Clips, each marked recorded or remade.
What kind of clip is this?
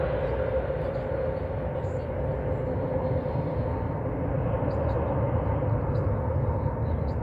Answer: recorded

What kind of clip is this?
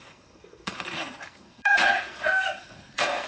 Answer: remade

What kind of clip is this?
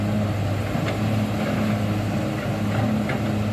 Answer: recorded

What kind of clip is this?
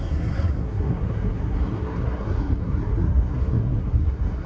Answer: remade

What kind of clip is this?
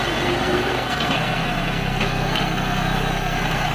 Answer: remade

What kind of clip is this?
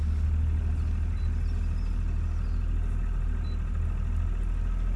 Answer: recorded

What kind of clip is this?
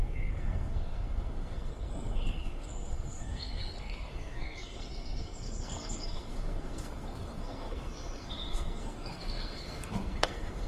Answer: remade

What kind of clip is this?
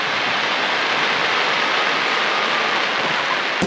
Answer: recorded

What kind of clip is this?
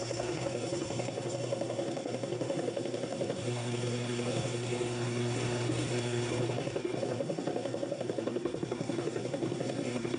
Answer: remade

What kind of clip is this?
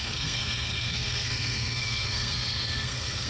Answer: remade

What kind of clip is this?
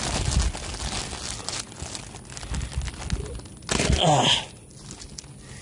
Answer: recorded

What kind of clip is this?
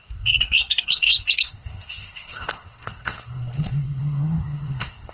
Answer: remade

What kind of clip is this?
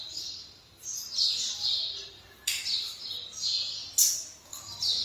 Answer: recorded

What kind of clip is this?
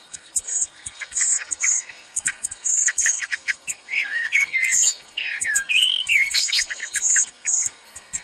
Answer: remade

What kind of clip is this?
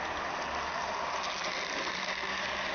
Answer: recorded